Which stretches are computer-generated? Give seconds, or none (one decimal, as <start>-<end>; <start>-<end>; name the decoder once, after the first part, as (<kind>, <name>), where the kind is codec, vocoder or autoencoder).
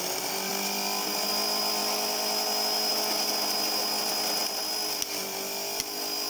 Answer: none